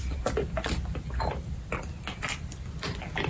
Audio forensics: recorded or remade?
recorded